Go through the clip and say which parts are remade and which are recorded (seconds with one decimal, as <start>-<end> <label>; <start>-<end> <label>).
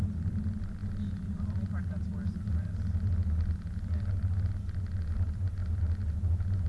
0.0-6.7 recorded